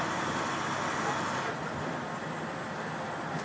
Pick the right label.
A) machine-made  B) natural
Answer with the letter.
B